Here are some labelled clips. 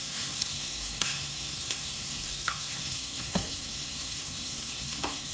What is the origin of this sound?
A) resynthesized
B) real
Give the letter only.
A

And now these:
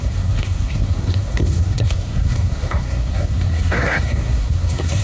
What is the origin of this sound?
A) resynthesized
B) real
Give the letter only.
A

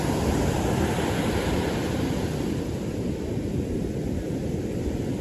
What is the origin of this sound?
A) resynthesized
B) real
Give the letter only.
B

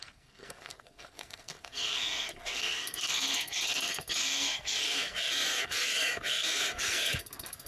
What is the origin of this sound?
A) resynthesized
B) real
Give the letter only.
A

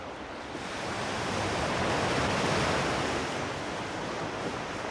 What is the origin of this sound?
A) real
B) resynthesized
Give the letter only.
A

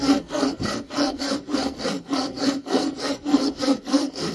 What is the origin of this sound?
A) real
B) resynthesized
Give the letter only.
B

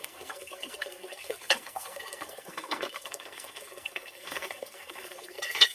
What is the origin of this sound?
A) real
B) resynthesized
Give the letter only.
B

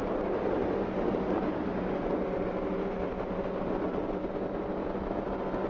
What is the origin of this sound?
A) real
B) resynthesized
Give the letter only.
A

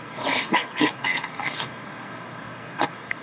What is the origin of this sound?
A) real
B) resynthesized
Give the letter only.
B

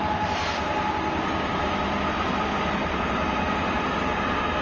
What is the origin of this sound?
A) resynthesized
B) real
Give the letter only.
B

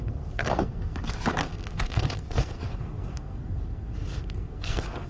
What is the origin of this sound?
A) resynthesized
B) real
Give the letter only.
A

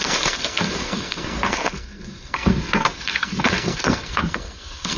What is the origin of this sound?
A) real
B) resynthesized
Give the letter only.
B